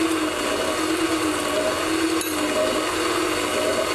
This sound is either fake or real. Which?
real